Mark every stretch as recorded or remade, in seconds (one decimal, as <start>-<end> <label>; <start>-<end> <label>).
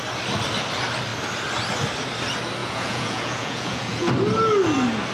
0.0-2.6 recorded; 2.6-4.1 remade; 4.1-5.1 recorded